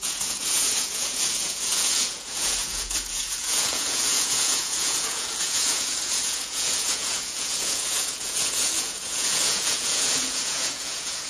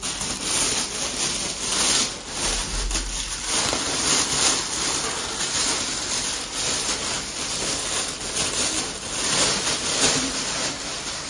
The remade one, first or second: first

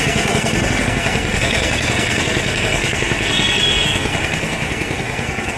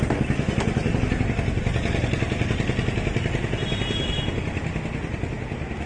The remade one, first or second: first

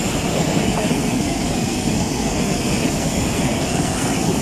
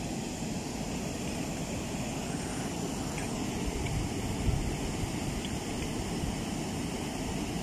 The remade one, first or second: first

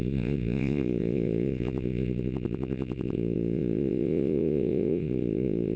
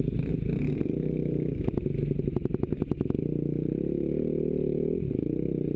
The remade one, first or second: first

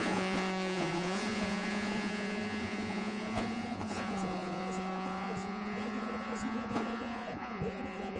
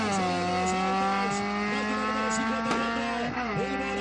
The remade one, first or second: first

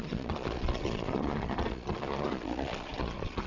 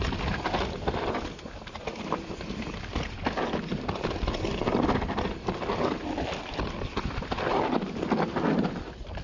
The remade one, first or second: first